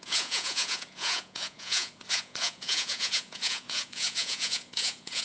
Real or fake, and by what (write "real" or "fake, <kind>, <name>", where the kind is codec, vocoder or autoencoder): fake, vocoder, Vocos